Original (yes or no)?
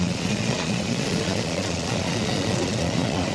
no